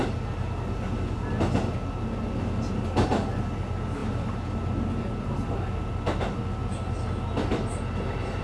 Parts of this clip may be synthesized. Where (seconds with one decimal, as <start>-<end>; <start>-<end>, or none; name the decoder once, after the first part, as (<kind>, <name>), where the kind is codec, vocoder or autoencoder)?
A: none